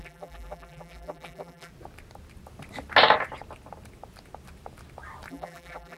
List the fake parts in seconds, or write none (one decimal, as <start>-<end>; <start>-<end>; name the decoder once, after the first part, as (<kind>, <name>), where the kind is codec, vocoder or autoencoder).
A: 0.0-1.7 (vocoder, BigVGAN v2); 5.3-6.0